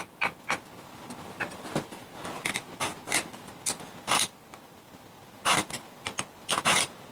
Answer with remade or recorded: recorded